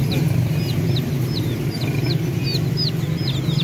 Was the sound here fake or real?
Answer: real